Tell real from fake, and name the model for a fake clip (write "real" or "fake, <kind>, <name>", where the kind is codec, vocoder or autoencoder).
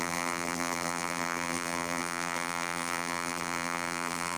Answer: fake, vocoder, BigVGAN v2